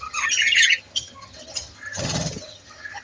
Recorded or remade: remade